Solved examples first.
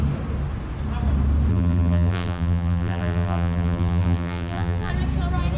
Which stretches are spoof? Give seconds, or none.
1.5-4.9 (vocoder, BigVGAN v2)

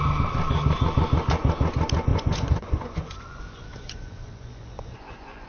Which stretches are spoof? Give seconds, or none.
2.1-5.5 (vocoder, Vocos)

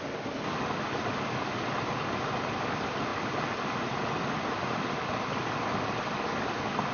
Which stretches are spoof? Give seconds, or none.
none

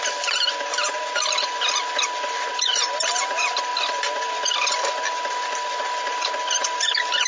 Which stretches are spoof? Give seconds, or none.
none